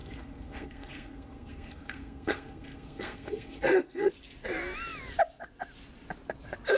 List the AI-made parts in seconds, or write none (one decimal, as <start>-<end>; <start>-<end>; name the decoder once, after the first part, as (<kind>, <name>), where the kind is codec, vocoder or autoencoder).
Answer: 0.0-4.1 (codec, SNAC)